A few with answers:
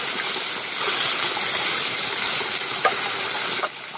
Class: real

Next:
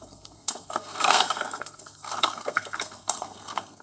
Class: fake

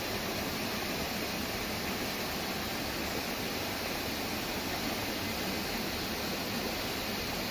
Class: real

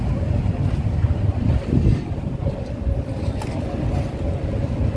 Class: real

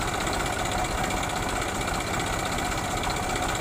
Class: real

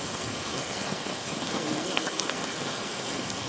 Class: fake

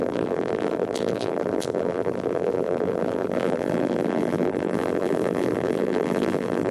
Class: fake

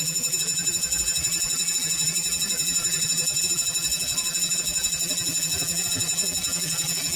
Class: fake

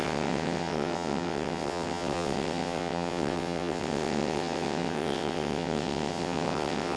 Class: fake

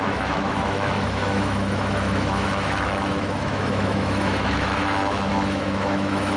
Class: fake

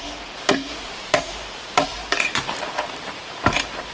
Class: fake